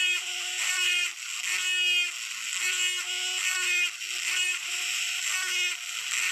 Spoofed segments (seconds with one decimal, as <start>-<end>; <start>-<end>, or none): 0.0-1.1; 4.2-5.3